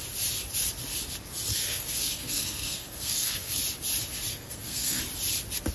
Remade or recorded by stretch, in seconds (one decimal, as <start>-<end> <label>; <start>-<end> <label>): 0.0-1.5 recorded; 1.5-3.6 remade; 3.6-4.3 recorded; 4.3-5.0 remade; 5.0-5.7 recorded